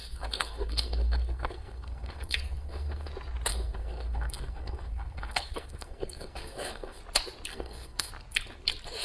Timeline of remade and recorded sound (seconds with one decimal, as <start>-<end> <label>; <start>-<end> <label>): 0.0-3.1 remade; 3.1-3.5 recorded; 3.5-7.0 remade; 7.0-7.5 recorded; 7.5-8.1 remade; 8.1-9.0 recorded